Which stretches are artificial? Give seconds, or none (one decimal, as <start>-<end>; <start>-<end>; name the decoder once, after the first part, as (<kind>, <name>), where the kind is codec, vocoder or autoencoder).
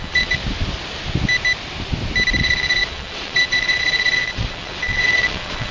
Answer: 0.0-0.4 (vocoder, WaveNeXt); 2.4-5.7